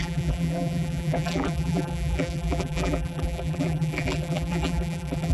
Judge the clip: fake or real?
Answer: fake